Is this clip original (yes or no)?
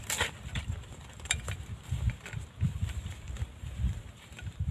no